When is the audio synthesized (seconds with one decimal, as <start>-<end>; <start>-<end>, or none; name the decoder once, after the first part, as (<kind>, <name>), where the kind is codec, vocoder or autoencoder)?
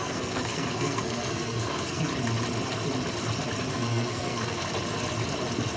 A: 0.0-2.1 (codec, SNAC); 3.7-4.6